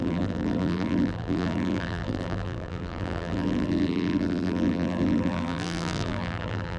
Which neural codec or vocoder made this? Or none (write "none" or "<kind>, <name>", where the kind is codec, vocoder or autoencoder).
vocoder, BigVGAN v2